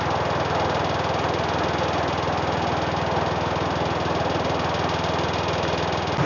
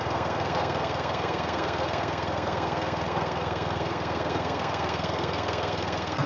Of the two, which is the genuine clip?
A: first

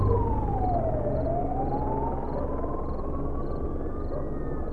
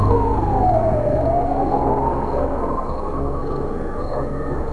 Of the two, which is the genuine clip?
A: first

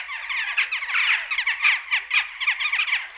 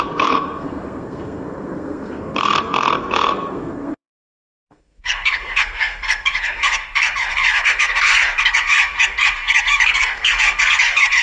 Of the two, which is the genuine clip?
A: first